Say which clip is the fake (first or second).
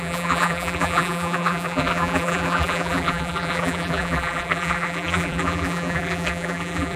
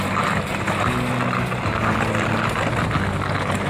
first